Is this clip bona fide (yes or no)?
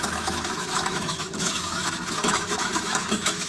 no